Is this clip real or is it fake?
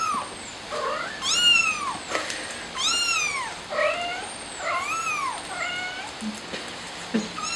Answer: real